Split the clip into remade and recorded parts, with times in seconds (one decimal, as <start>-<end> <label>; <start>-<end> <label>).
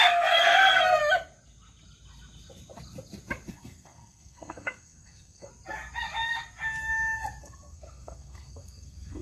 0.0-1.0 remade; 1.0-3.5 recorded; 3.5-5.5 remade; 5.5-7.4 recorded; 7.4-9.2 remade